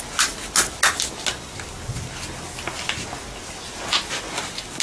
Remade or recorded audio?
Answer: recorded